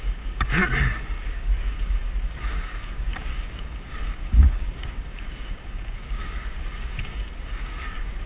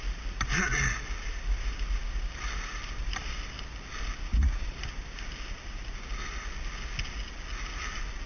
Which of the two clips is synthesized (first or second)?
first